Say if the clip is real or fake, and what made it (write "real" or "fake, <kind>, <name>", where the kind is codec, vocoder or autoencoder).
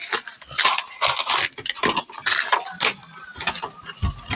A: real